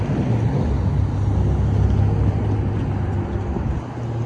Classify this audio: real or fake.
real